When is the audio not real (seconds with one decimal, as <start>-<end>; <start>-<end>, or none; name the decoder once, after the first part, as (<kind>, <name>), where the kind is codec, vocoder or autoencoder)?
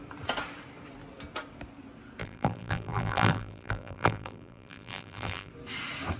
2.2-5.5 (vocoder, BigVGAN v2)